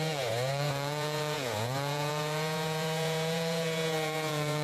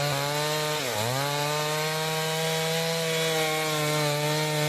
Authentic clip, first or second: second